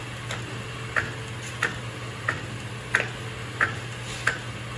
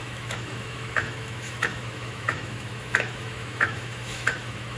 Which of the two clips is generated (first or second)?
second